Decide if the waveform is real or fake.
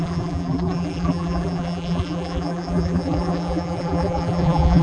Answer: fake